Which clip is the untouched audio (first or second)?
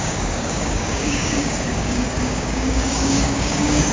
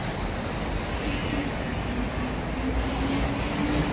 second